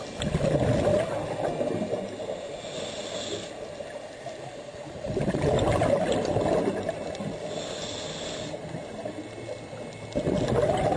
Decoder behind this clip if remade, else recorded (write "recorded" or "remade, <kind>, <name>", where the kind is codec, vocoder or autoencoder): recorded